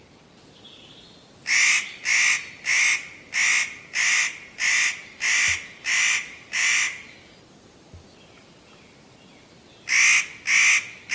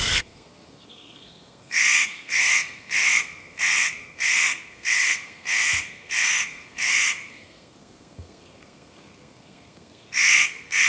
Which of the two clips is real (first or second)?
first